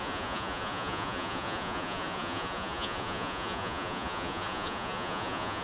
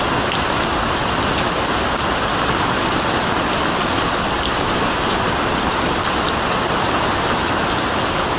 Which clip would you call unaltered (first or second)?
second